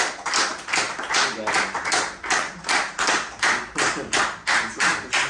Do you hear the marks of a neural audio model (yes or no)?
no